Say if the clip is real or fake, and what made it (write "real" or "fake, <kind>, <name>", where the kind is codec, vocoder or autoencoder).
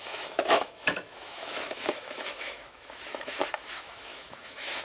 fake, autoencoder, DAC-VAE